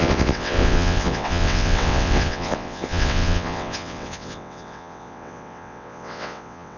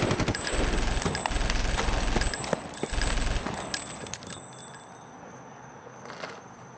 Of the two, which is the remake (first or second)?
first